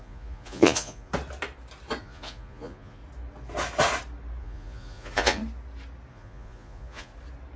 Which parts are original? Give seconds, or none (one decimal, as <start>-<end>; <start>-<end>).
1.1-2.0; 3.0-4.4; 5.4-6.1; 7.1-7.6